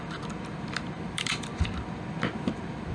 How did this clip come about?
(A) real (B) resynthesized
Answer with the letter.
B